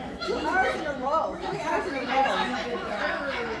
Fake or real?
fake